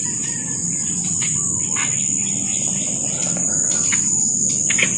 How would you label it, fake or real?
real